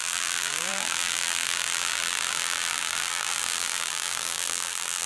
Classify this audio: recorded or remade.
remade